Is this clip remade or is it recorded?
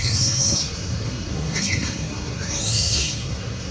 remade